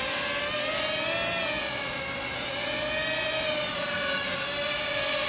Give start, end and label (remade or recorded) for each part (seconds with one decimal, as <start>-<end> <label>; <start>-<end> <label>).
0.0-5.3 recorded